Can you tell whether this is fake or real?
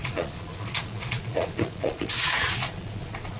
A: fake